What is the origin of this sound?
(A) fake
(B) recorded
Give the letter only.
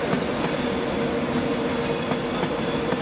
B